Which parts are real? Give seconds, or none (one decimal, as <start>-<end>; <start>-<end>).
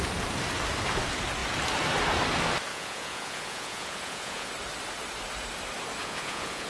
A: 0.0-2.7; 4.5-6.0